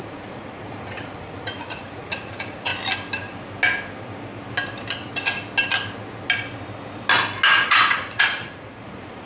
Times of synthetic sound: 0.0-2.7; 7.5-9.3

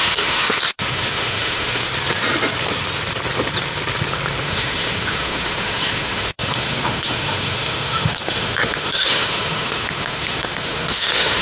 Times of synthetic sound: 0.0-1.9; 4.4-11.4

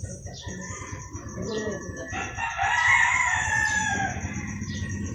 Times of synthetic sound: 1.3-1.8

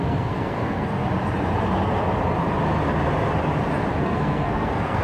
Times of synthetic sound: 0.0-1.0; 4.0-5.0

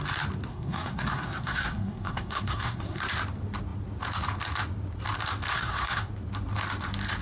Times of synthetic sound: 0.5-3.0; 5.5-6.1

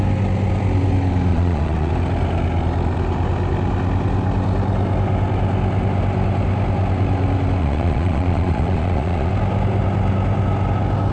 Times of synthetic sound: 1.3-1.9; 7.6-9.3